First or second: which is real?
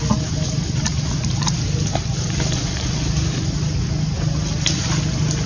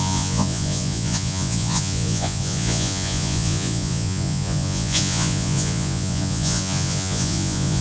first